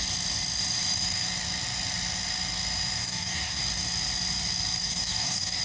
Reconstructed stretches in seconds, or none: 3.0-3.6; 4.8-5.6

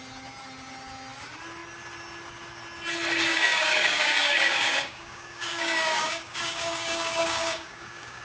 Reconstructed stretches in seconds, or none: 3.3-8.2

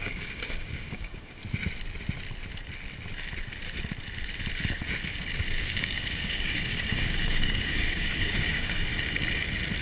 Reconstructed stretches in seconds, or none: 0.0-1.4; 5.6-8.9

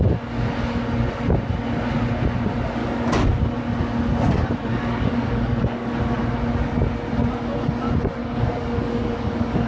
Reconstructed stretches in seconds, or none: 2.8-3.4; 4.7-6.0; 8.2-9.7

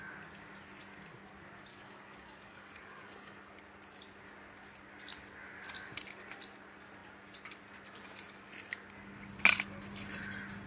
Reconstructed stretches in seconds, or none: 1.7-3.5

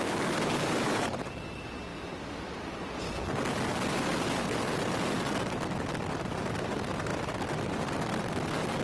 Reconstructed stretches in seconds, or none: 0.5-1.2

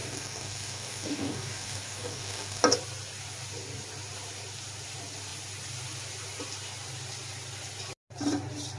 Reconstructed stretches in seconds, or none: 0.0-2.6